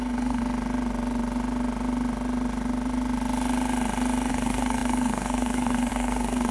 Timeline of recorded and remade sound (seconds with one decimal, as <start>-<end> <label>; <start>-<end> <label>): 0.0-0.4 remade; 0.4-4.3 recorded; 4.3-6.5 remade